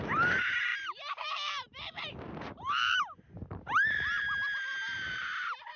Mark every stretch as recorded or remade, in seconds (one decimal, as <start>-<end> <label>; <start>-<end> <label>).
0.0-5.8 remade

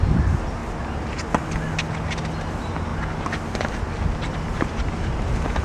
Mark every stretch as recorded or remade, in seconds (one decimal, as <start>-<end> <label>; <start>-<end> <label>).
0.0-0.6 remade; 0.6-2.5 recorded; 2.5-2.9 remade; 2.9-4.6 recorded; 4.6-5.6 remade

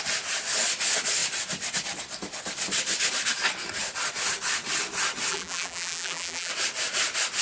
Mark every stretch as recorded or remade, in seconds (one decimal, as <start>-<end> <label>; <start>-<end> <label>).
0.0-5.3 recorded; 5.3-6.5 remade; 6.5-7.4 recorded

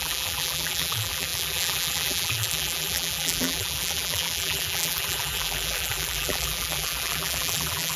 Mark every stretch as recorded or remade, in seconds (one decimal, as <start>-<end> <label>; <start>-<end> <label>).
0.0-8.0 remade

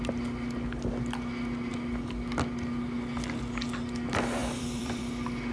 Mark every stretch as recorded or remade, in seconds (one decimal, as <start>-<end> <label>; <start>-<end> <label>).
0.0-4.4 recorded; 4.4-5.0 remade; 5.0-5.5 recorded

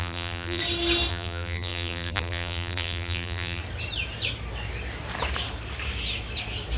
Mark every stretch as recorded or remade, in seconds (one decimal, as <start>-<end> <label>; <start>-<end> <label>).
0.0-0.6 remade; 0.6-1.1 recorded; 1.1-3.6 remade; 3.6-6.8 recorded

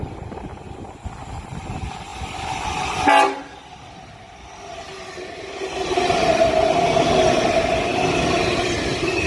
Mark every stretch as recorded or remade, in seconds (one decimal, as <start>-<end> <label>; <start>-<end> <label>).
0.0-9.3 recorded